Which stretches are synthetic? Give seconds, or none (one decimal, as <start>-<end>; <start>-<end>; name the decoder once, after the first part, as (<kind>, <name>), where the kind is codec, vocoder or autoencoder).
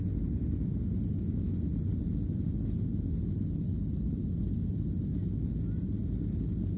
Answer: none